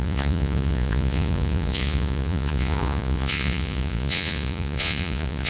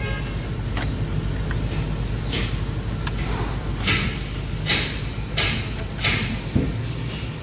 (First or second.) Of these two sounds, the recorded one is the second